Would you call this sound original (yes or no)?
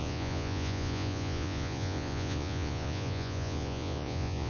no